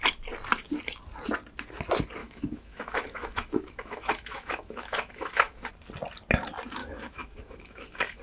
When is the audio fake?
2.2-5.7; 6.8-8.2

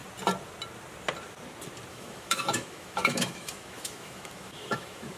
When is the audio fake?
1.9-5.2